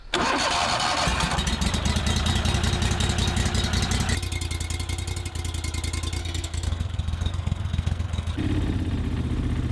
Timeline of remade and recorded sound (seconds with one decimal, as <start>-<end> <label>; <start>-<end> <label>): 0.0-6.2 recorded; 6.2-8.3 remade; 8.3-9.7 recorded